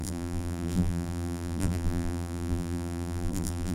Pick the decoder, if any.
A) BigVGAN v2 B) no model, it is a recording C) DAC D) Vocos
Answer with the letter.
A